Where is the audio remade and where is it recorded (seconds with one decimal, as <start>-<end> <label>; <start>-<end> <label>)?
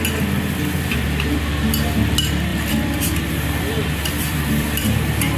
0.0-2.5 recorded; 2.5-5.0 remade; 5.0-5.4 recorded